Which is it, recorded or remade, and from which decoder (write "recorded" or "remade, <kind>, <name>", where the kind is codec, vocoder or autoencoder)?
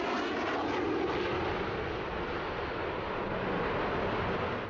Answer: recorded